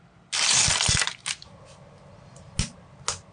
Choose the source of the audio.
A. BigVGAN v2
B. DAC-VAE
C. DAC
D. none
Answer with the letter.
D